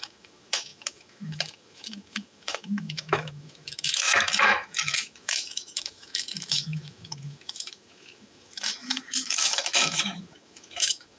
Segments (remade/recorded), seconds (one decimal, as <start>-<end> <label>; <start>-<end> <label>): 0.0-11.2 remade